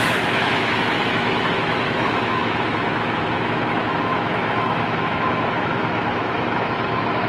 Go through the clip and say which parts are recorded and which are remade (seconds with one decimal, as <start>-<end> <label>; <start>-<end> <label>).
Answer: 0.0-7.3 remade